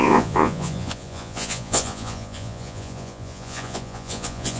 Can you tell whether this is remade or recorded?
remade